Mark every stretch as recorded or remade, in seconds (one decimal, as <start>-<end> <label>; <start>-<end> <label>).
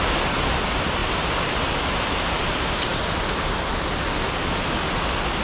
0.0-5.4 recorded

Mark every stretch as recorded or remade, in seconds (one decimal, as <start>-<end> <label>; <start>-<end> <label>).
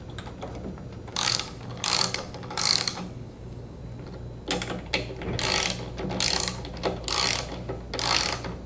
0.0-1.1 recorded; 1.1-3.8 remade; 3.8-8.7 recorded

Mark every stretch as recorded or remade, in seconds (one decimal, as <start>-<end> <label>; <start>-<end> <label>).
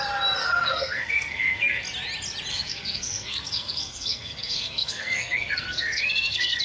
0.0-0.4 recorded; 0.4-1.8 remade; 1.8-2.5 recorded; 2.5-6.6 remade